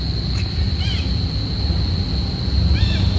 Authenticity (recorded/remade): recorded